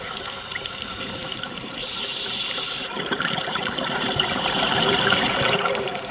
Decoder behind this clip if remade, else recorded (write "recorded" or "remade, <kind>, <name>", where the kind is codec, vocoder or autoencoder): remade, vocoder, BigVGAN v2